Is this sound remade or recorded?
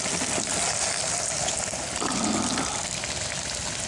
recorded